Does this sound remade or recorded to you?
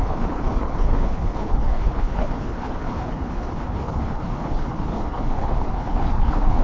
remade